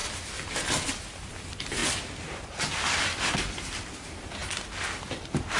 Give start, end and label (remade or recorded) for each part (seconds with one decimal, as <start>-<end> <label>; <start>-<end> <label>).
0.0-1.3 recorded; 1.3-4.4 remade; 4.4-5.6 recorded